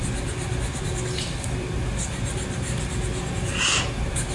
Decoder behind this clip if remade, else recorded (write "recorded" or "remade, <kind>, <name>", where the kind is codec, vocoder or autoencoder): recorded